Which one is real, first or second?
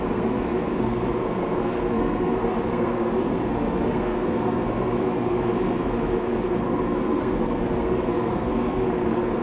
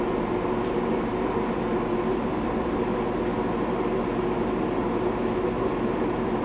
second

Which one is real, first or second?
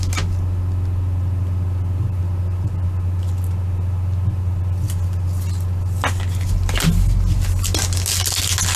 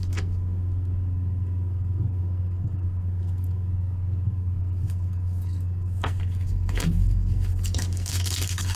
first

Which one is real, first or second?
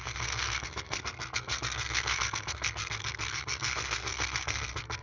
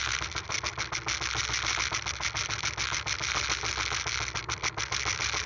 second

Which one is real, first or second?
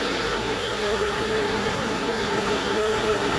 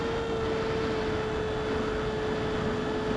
second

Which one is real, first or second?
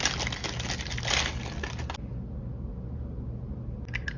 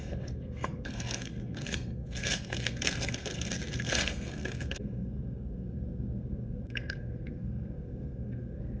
first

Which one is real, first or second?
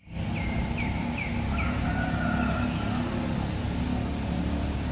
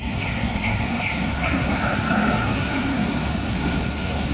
first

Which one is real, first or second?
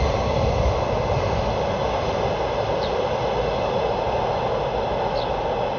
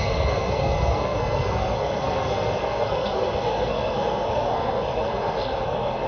first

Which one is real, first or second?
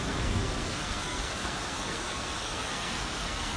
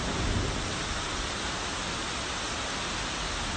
second